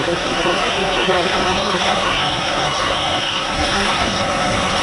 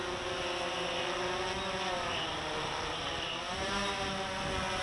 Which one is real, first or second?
second